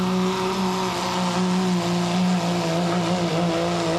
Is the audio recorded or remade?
recorded